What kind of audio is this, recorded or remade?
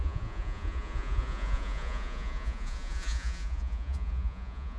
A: remade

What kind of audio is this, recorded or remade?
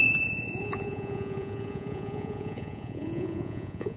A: remade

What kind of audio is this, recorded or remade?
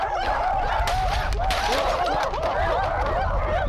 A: recorded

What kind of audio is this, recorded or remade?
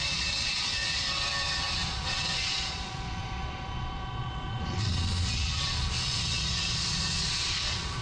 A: remade